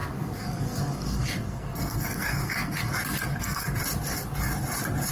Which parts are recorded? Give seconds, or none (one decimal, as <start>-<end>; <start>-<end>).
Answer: 2.9-3.3; 3.8-5.1